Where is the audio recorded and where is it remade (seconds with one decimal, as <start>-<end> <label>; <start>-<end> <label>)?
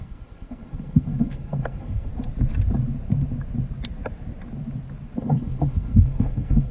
0.0-2.1 remade; 2.1-5.2 recorded; 5.2-6.7 remade